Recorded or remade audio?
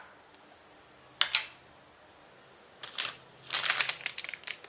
recorded